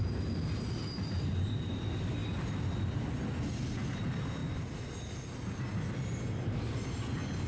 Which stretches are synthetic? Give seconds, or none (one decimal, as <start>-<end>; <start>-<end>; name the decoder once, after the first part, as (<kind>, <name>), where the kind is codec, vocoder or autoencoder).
none